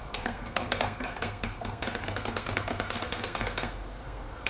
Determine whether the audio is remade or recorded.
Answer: remade